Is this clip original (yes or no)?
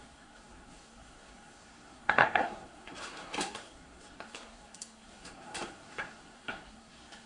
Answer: no